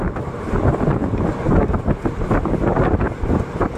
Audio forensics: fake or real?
real